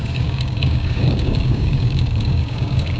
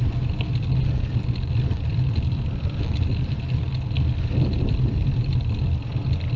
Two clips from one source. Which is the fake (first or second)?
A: first